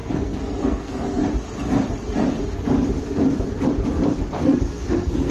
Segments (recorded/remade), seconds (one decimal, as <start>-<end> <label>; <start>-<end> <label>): 0.0-1.2 remade; 1.2-4.4 recorded; 4.4-5.3 remade